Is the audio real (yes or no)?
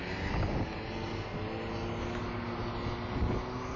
yes